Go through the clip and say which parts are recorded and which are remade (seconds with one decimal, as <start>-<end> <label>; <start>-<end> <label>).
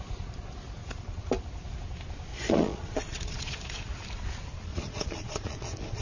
0.0-2.3 recorded; 2.3-3.8 remade; 3.8-4.7 recorded; 4.7-6.0 remade